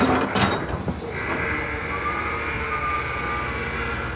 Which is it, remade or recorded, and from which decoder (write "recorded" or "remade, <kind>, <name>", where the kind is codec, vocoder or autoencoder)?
recorded